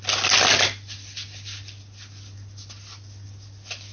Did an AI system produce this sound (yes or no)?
no